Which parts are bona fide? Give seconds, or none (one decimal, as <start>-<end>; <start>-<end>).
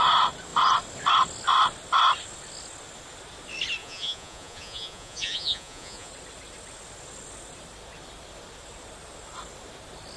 0.0-3.8; 6.1-10.2